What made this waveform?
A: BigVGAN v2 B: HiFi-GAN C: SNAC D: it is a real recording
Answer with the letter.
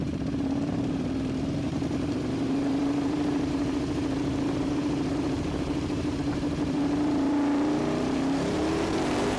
A